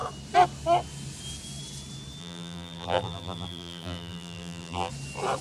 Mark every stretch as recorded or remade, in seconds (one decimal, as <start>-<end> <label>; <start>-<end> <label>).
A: 0.0-2.2 recorded; 2.2-4.9 remade; 4.9-5.4 recorded